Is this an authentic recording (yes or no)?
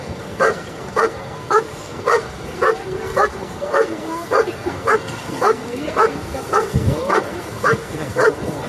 no